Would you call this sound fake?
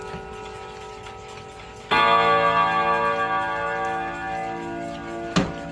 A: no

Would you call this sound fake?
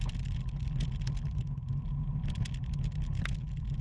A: no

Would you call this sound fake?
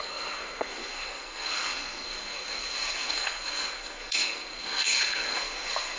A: yes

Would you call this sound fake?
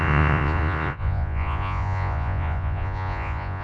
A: yes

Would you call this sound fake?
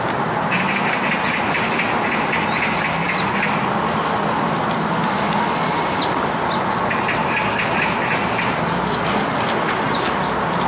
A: no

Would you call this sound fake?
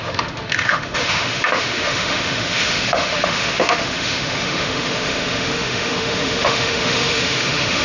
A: yes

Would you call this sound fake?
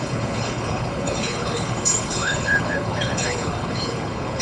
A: yes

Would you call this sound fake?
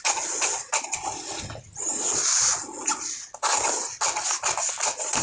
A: no